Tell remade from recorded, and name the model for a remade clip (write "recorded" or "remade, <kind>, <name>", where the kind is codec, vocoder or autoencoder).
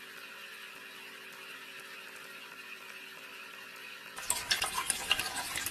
recorded